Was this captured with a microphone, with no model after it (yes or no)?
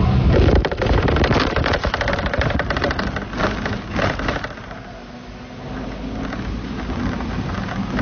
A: yes